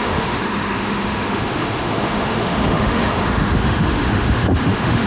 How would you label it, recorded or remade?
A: remade